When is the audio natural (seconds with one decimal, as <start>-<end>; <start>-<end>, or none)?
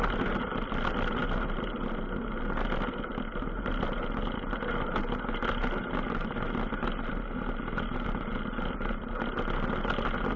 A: 0.0-10.4